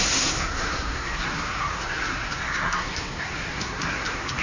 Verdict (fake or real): fake